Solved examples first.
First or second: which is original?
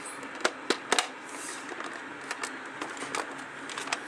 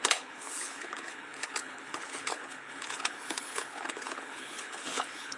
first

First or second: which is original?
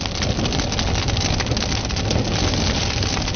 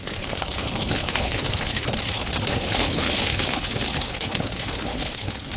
first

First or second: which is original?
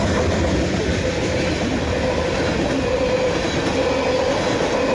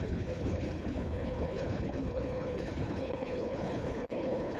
first